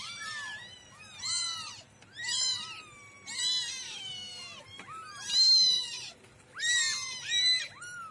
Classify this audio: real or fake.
real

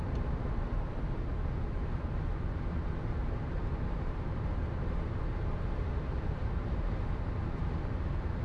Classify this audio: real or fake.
real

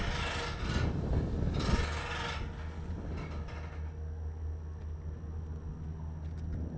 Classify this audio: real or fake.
real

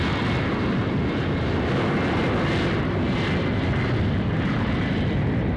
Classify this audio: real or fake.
real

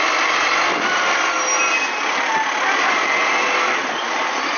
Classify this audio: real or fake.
real